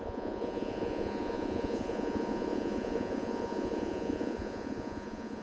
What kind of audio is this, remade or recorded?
remade